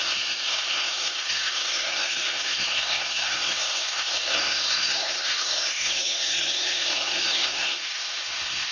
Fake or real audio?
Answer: fake